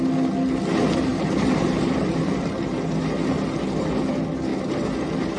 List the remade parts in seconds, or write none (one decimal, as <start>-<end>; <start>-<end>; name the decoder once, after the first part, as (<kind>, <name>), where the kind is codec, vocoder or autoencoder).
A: 1.1-2.7 (vocoder, BigVGAN v2)